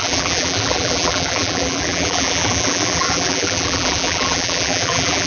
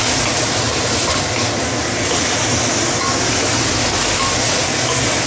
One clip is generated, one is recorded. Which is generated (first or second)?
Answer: first